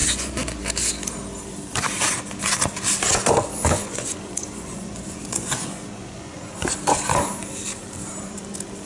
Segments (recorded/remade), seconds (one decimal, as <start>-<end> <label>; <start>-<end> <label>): 0.0-0.6 remade; 0.6-3.5 recorded; 3.5-6.7 remade; 6.7-8.9 recorded